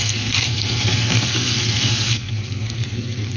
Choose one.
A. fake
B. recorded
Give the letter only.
A